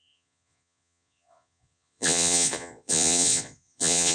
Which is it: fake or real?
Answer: fake